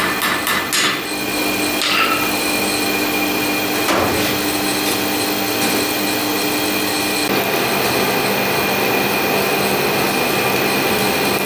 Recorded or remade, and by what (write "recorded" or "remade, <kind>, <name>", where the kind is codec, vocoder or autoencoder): recorded